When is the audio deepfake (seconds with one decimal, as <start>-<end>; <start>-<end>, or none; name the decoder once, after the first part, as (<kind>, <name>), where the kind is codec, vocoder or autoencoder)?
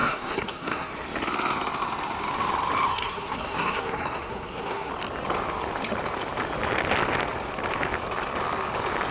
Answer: 0.0-0.9 (codec, SNAC); 2.9-4.9